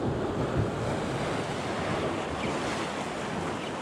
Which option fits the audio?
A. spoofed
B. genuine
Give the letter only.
B